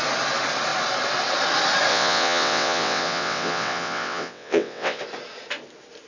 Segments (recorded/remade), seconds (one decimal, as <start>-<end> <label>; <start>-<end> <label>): 0.0-1.9 recorded; 1.9-5.0 remade; 5.0-6.1 recorded